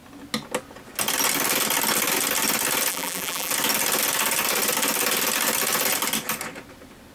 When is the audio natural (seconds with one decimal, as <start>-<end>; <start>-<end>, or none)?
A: 0.0-2.9; 3.5-7.1